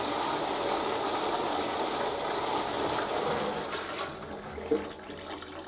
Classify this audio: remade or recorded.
recorded